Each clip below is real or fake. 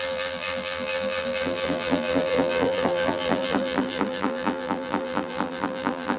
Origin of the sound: fake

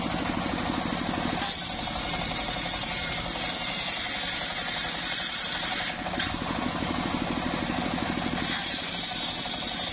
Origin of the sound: real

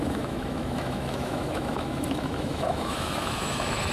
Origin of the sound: fake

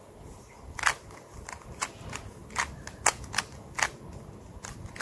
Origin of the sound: real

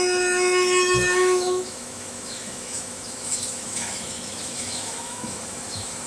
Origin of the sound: fake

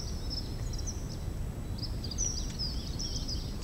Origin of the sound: real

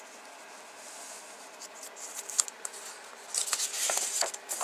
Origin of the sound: real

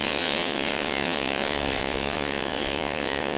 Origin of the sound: fake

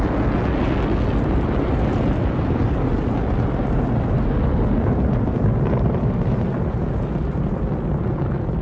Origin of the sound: real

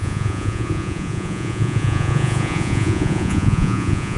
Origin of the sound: fake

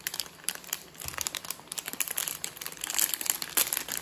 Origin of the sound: fake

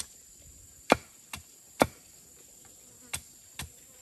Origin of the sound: real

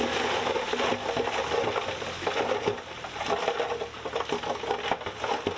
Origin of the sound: real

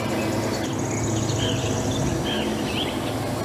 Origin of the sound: real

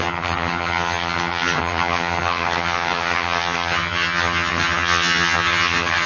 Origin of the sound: fake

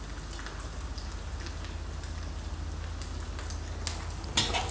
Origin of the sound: real